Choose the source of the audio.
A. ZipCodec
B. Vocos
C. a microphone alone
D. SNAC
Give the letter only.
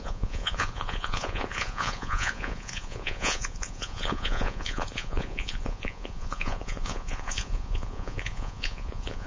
B